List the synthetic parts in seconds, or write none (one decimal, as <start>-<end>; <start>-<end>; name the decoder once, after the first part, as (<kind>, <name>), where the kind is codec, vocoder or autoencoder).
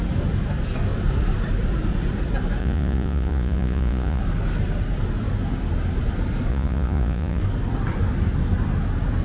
2.6-4.2 (vocoder, Vocos); 6.5-7.4